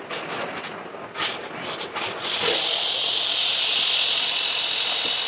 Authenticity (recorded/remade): recorded